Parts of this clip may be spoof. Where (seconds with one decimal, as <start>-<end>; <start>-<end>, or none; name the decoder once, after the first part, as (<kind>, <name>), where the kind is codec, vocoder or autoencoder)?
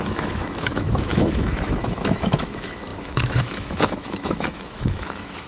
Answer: 0.0-5.5 (autoencoder, DAC-VAE)